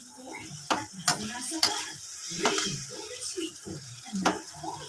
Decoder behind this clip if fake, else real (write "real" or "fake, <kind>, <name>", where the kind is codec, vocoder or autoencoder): real